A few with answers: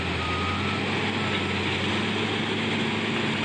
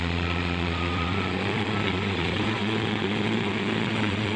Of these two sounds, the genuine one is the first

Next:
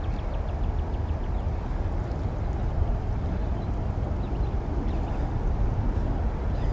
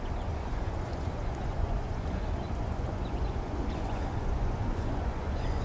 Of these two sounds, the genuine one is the first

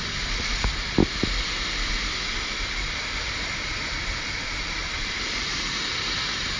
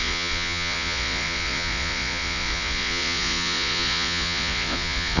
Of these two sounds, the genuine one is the first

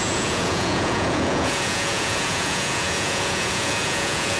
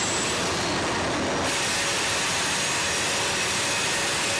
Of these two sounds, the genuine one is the second